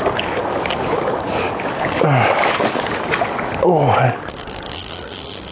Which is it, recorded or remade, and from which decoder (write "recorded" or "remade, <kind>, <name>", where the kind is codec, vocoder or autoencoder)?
remade, codec, DAC